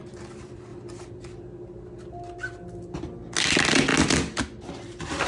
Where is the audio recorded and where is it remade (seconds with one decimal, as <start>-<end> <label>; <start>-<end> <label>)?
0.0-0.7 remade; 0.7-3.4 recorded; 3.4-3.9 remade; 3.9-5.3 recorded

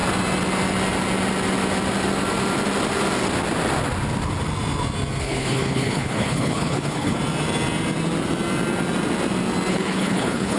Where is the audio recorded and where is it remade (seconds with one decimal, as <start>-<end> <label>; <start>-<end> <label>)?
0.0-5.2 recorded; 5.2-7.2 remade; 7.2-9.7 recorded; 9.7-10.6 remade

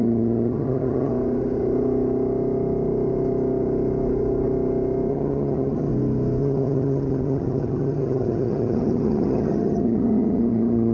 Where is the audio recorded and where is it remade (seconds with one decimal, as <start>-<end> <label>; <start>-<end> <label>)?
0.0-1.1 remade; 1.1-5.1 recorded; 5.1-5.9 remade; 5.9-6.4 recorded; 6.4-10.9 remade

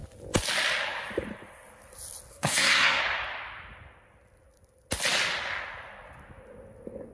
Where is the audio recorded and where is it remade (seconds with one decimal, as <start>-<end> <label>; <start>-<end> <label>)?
0.0-2.3 recorded; 2.3-3.0 remade; 3.0-7.1 recorded

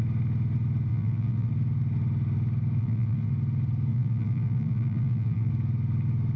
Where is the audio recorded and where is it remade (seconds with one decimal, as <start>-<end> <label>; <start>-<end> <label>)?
0.0-0.9 recorded; 0.9-1.5 remade; 1.5-2.8 recorded; 2.8-3.3 remade; 3.3-3.9 recorded; 3.9-5.5 remade; 5.5-6.4 recorded